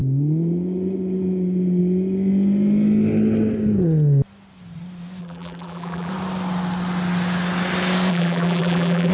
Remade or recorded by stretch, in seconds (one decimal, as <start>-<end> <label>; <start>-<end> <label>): 0.0-5.2 recorded; 5.2-6.1 remade; 6.1-8.1 recorded; 8.1-9.1 remade